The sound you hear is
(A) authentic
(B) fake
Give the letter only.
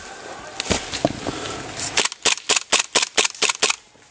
A